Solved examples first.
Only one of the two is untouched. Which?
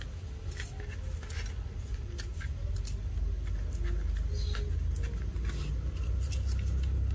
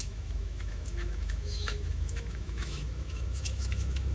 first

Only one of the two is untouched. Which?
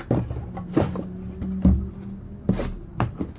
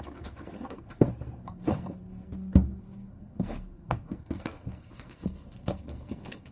first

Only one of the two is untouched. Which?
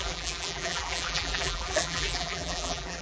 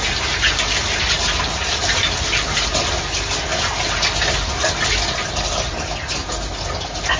second